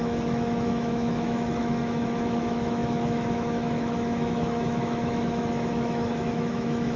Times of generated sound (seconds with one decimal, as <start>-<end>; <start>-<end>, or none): 0.0-7.0